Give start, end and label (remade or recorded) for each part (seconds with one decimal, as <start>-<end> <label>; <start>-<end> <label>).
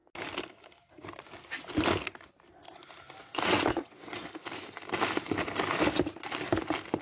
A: 0.0-3.2 recorded; 3.2-4.2 remade; 4.2-7.0 recorded